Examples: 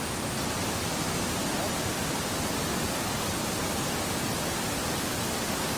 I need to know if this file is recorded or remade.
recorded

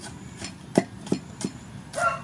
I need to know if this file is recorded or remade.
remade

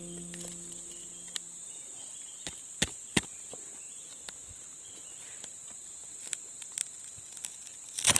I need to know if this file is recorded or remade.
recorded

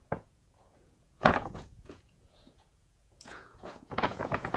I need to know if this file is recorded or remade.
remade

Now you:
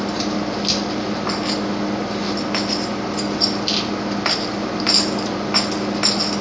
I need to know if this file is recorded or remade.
recorded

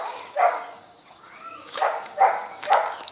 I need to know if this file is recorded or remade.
remade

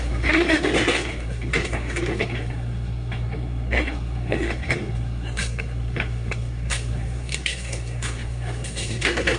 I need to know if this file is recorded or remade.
remade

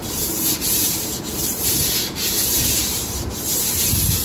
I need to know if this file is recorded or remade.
remade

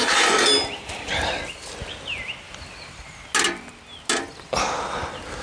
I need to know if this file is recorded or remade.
recorded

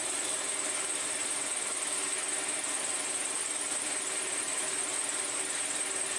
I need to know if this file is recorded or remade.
recorded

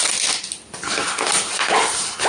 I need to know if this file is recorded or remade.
recorded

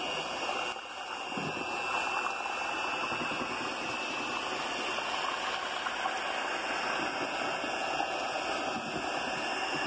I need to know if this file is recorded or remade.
recorded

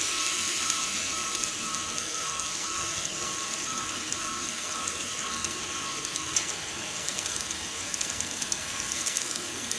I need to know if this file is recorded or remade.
remade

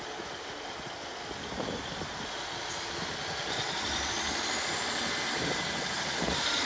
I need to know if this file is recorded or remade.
recorded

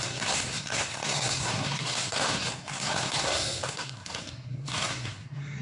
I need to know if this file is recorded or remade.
remade